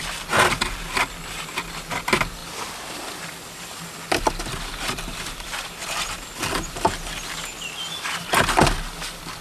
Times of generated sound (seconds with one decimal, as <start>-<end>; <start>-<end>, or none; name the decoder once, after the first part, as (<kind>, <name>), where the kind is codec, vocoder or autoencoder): 2.4-7.1 (vocoder, BigVGAN v2)